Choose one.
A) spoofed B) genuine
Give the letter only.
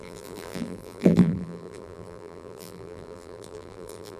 A